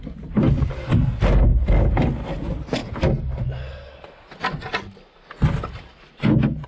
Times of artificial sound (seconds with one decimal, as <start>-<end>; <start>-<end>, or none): none